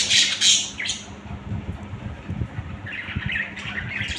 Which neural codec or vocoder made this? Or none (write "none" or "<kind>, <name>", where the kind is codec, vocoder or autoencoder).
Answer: none